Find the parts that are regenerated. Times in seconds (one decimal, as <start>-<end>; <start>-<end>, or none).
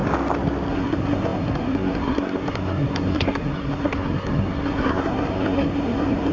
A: 0.7-6.3